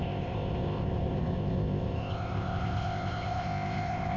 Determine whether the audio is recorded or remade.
remade